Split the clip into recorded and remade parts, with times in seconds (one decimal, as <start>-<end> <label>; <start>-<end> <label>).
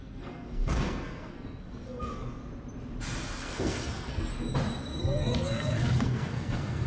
0.0-2.4 remade; 2.4-3.4 recorded; 3.4-4.3 remade; 4.3-5.0 recorded; 5.0-6.9 remade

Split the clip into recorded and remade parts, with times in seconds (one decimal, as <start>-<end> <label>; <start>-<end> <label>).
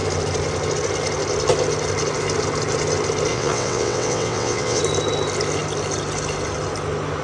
0.0-3.3 recorded; 3.3-4.8 remade; 4.8-7.2 recorded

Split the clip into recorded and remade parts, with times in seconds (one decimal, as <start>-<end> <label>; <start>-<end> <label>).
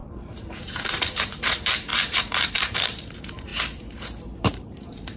0.0-5.2 remade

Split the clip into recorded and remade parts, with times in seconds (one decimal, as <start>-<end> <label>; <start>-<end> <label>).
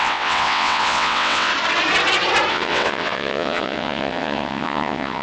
0.0-1.5 remade; 1.5-2.5 recorded; 2.5-5.2 remade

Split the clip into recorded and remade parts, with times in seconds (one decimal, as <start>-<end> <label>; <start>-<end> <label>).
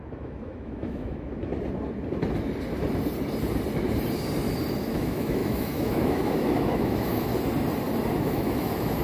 0.0-1.5 remade; 1.5-4.9 recorded; 4.9-7.3 remade; 7.3-8.1 recorded; 8.1-9.0 remade